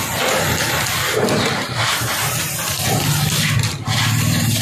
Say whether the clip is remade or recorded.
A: recorded